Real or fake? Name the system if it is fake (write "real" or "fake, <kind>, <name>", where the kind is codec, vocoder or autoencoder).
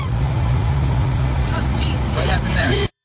fake, vocoder, Vocos